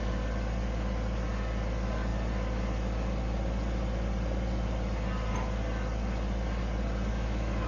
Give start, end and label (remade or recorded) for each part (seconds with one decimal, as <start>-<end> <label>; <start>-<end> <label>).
0.0-7.1 recorded; 7.1-7.7 remade